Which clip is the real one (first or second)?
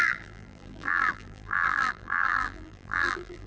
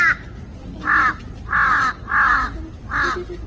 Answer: second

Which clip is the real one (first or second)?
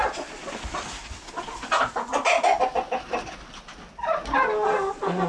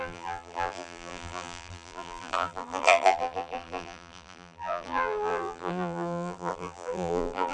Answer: first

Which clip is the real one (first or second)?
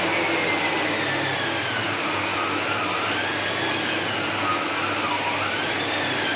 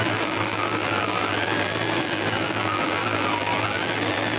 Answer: first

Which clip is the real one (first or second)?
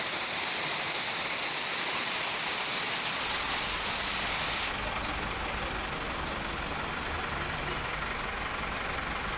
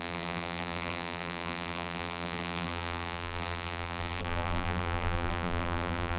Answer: first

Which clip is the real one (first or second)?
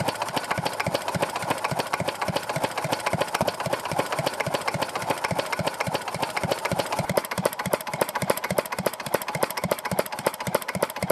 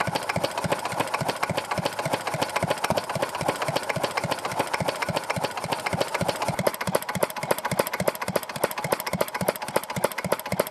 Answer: second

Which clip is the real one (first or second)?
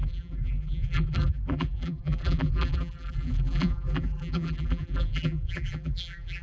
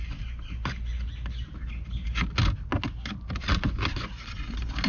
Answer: second